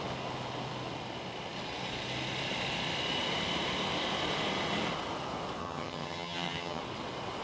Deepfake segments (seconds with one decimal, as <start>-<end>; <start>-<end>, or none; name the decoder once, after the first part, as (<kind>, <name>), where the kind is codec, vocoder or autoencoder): 5.6-6.8 (vocoder, HiFi-GAN)